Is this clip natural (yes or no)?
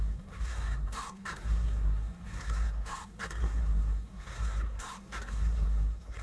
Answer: no